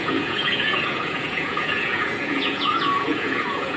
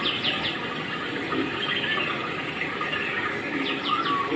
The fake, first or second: first